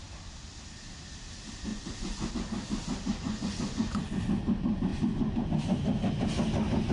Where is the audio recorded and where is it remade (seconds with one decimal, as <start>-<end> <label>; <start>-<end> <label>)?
0.0-1.7 recorded; 1.7-2.3 remade; 2.3-3.1 recorded; 3.1-4.2 remade; 4.2-4.9 recorded; 4.9-5.4 remade; 5.4-6.9 recorded